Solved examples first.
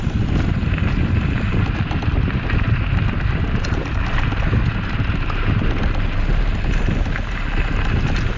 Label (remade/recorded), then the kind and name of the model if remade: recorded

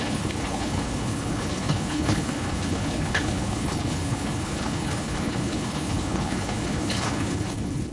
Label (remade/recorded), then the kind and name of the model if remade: remade, codec, HILCodec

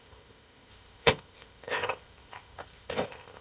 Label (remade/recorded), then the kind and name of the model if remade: remade, codec, ZipCodec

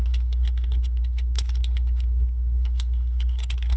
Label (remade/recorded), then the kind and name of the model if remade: remade, codec, SNAC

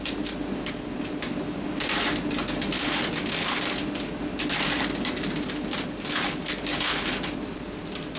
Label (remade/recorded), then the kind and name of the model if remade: recorded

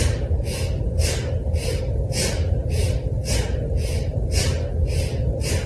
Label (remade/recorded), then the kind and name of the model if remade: recorded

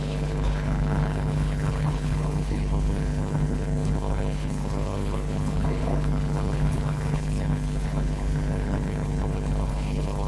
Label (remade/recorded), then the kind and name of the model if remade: remade, codec, HILCodec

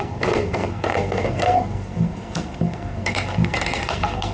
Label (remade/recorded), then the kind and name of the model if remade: remade, codec, SNAC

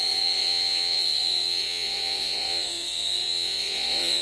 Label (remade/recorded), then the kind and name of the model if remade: remade, vocoder, Vocos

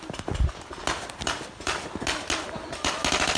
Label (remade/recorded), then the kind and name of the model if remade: recorded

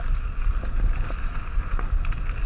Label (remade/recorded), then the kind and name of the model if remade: recorded